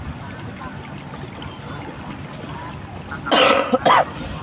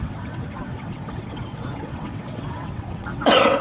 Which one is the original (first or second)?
first